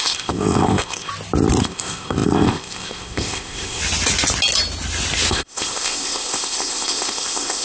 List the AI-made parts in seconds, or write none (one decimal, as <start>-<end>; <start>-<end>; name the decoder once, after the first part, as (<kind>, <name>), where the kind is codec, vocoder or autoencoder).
0.0-1.1 (codec, ZipCodec); 1.6-3.8; 5.3-7.6